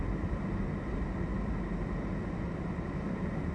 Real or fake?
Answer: real